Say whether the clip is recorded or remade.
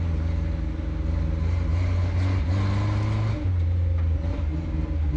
recorded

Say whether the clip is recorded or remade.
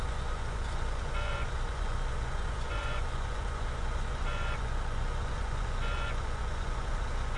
remade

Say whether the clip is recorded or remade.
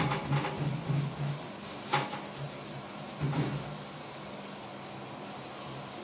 recorded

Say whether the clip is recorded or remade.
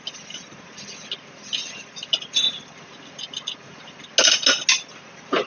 recorded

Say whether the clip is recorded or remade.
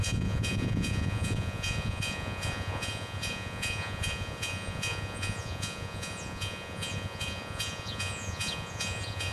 remade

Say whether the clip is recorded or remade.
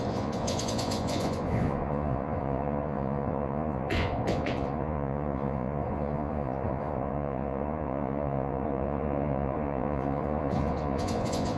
remade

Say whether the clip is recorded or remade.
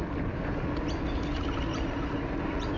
recorded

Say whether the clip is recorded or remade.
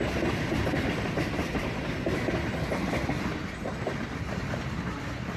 recorded